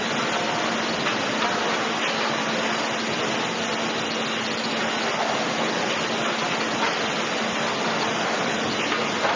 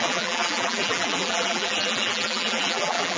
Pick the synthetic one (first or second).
second